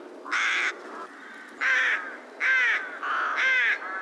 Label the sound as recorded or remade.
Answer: recorded